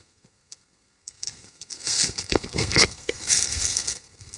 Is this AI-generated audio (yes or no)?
yes